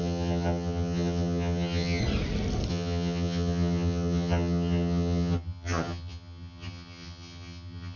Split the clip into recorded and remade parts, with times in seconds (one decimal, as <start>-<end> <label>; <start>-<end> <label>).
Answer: 0.0-2.0 remade; 2.0-2.7 recorded; 2.7-8.0 remade